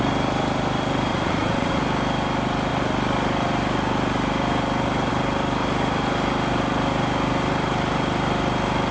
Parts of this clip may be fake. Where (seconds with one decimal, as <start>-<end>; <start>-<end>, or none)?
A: 1.1-1.8